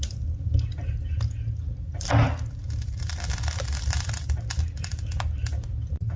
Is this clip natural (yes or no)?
yes